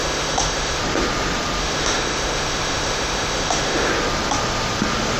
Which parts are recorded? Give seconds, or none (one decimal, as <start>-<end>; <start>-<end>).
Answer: 0.8-1.6; 3.9-5.2

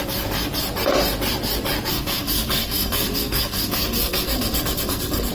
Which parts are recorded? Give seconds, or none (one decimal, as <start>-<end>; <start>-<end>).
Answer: 0.0-1.9